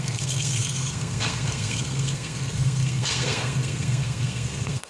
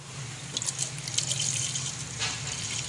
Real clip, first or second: second